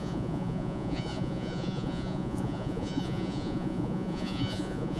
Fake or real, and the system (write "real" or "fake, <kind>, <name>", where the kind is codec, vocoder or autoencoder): fake, vocoder, Vocos